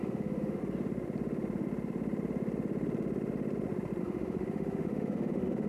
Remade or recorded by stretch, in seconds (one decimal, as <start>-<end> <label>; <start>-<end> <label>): 0.0-0.6 remade; 0.6-4.0 recorded; 4.0-5.7 remade